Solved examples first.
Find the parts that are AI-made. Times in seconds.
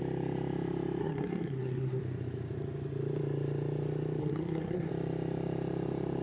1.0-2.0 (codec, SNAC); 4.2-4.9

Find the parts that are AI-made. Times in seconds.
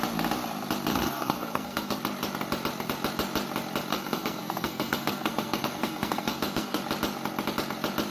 0.9-2.0 (codec, SNAC); 3.9-6.8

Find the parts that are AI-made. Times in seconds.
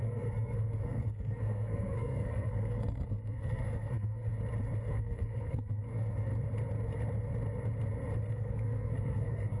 0.0-4.3 (codec, SNAC); 4.9-6.3; 8.3-9.6